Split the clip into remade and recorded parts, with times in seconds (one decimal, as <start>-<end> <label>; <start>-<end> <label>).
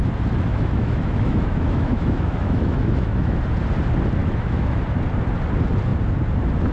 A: 0.0-0.5 recorded; 0.5-3.4 remade; 3.4-4.2 recorded; 4.2-4.8 remade; 4.8-6.7 recorded